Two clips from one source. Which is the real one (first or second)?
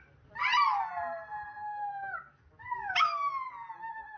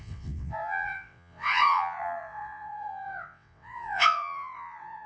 first